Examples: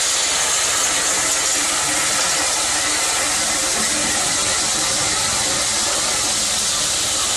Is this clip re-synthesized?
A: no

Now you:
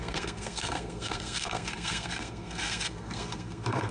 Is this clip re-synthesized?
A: yes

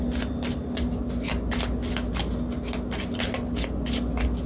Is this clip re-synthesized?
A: no